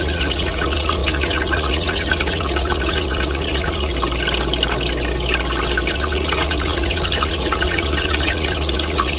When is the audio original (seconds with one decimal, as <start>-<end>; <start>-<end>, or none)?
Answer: 3.9-5.9